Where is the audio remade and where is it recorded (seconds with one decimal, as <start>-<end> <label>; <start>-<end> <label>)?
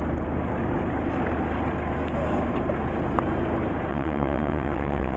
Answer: 0.0-3.9 recorded; 3.9-5.2 remade